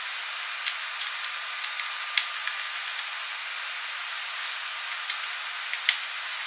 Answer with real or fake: real